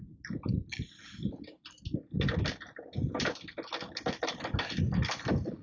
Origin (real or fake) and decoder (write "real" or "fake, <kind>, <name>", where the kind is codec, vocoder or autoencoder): real